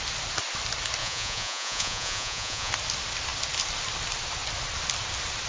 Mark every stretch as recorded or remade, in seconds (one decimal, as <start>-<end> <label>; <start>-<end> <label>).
0.0-1.0 recorded; 1.0-2.7 remade; 2.7-5.5 recorded